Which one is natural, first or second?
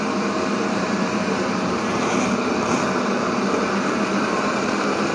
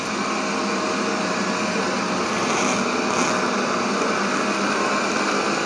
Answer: second